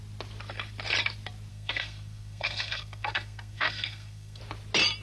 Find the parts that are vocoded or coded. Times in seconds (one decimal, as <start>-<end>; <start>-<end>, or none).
1.5-4.4